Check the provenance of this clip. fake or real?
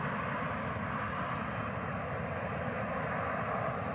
real